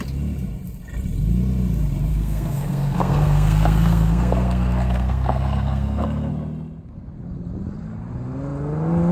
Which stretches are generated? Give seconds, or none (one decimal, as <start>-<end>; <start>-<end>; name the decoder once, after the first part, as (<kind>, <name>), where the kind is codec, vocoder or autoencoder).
2.1-6.3 (codec, SNAC)

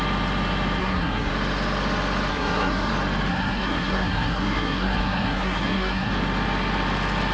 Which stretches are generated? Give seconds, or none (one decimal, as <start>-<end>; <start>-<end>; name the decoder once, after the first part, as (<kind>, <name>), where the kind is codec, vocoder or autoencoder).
0.8-1.3 (codec, SNAC); 2.3-2.9; 3.3-6.1

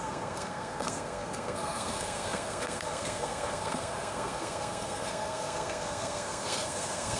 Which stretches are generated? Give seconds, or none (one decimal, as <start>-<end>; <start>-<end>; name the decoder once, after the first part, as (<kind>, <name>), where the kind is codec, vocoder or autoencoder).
0.0-7.2 (codec, SNAC)

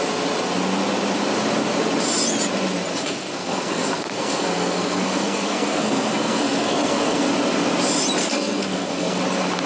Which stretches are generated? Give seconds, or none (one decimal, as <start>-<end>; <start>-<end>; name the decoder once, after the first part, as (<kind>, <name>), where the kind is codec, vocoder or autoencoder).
2.9-7.3 (codec, SNAC); 8.2-9.2

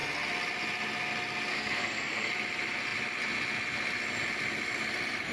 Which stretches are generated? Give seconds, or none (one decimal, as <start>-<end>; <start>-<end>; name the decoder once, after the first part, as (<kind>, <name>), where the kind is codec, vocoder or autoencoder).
1.5-2.3 (codec, SNAC)